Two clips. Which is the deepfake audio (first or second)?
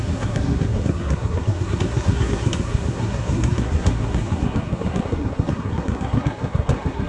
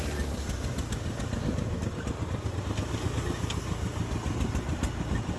first